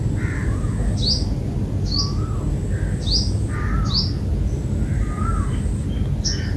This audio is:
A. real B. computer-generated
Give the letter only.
A